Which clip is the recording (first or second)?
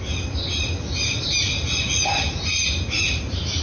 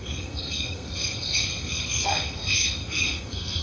first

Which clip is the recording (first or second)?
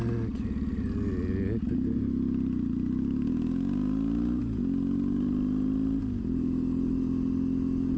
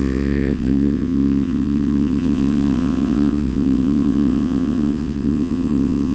first